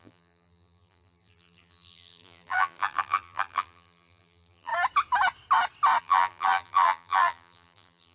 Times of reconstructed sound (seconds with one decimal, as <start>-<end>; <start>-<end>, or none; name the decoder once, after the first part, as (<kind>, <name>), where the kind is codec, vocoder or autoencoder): 0.0-4.7 (vocoder, BigVGAN v2); 6.0-8.1

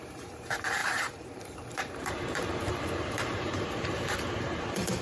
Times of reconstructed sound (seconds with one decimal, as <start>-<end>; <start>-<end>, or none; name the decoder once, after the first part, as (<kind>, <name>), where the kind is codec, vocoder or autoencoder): 0.0-5.0 (vocoder, BigVGAN v2)

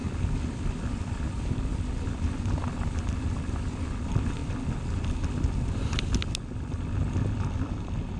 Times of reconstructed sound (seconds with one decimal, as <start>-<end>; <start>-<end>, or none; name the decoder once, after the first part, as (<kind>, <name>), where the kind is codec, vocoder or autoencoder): 0.0-1.3 (vocoder, BigVGAN v2)

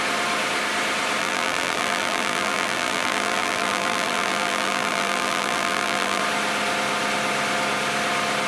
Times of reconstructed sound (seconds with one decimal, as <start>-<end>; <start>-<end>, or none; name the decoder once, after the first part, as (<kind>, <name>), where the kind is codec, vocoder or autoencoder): 1.2-6.2 (vocoder, BigVGAN v2)

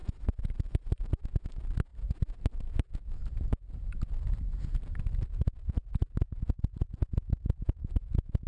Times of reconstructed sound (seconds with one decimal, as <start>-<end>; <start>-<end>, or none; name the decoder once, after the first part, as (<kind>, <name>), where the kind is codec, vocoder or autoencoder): 0.0-1.0 (vocoder, BigVGAN v2)

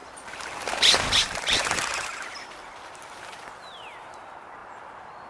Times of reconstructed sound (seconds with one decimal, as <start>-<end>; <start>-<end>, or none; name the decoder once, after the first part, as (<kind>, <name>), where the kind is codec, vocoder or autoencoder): 0.0-3.2 (vocoder, BigVGAN v2)

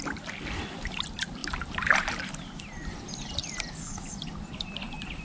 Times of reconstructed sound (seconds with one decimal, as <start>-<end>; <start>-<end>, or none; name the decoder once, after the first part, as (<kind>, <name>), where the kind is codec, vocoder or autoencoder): none